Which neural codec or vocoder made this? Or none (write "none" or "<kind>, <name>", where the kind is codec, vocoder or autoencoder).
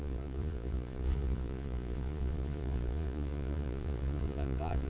vocoder, Vocos